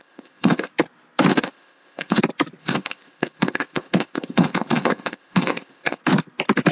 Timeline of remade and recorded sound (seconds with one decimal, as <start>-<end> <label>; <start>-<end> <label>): 0.0-0.7 remade; 0.7-1.3 recorded; 1.3-2.2 remade; 2.2-2.6 recorded; 2.6-6.0 remade; 6.0-6.7 recorded